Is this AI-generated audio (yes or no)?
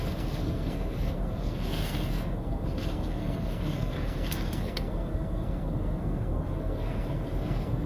yes